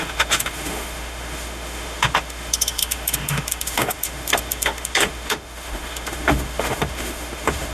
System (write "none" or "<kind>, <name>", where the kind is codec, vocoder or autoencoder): autoencoder, DAC-VAE